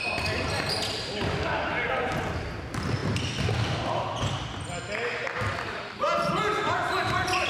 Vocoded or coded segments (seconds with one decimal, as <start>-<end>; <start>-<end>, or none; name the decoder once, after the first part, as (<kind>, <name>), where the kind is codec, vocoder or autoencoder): none